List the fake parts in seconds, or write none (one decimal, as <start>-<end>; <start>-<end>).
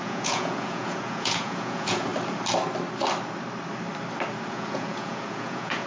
0.0-2.1; 4.5-5.9